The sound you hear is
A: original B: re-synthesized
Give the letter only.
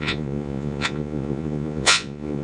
B